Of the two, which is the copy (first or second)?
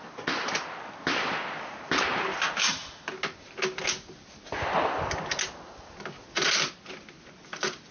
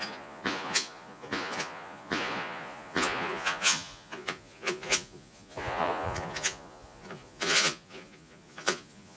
second